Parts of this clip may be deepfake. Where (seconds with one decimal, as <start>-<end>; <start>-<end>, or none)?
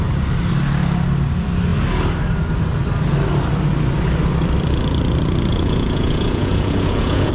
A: 5.5-7.3